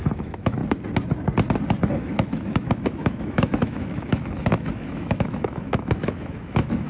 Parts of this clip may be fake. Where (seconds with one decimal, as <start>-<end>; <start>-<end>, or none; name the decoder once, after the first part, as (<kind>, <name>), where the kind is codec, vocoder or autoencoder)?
0.0-0.6 (autoencoder, DAC-VAE); 1.9-6.9